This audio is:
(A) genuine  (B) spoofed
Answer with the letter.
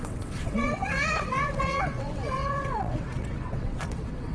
B